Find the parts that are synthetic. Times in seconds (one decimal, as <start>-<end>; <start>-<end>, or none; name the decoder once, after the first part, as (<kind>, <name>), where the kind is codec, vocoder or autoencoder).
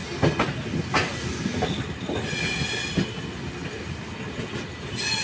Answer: none